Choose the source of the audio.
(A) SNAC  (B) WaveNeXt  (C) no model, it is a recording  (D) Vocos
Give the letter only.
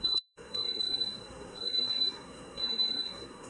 A